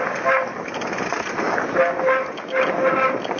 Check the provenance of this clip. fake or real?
real